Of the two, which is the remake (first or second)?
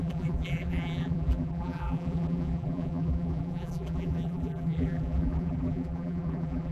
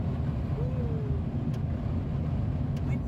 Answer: first